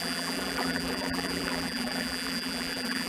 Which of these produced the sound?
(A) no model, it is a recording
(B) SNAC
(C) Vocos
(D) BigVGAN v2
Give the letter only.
D